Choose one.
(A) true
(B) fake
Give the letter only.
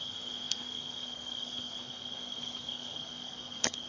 B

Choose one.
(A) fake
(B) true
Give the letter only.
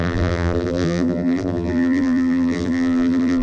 A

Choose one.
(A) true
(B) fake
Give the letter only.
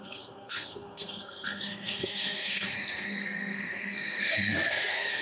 B